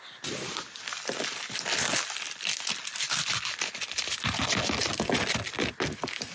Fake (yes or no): no